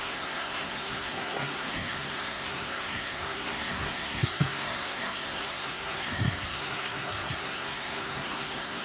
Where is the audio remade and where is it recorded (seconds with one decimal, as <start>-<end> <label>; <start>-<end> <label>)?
0.0-8.8 remade